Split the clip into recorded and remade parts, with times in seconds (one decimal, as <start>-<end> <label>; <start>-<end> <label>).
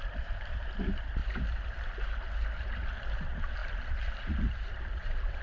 0.0-1.2 remade; 1.2-3.0 recorded; 3.0-5.4 remade